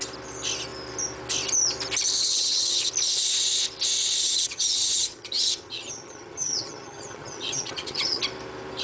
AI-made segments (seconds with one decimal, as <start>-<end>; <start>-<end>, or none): 2.2-2.9; 4.2-8.2